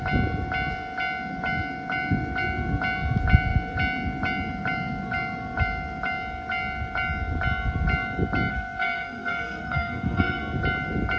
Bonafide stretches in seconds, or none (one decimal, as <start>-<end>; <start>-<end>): 0.0-8.5; 10.4-11.2